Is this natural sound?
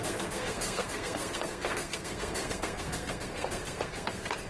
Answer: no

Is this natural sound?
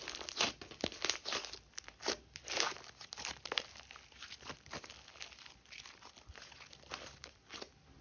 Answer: yes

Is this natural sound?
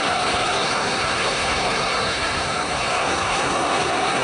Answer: no